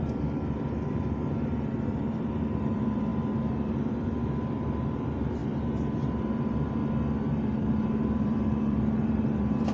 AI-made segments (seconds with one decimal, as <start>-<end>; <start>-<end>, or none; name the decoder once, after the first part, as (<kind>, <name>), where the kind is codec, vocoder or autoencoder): 0.0-5.4 (vocoder, BigVGAN v2); 5.9-6.8; 7.3-9.7